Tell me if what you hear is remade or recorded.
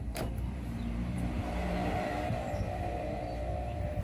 remade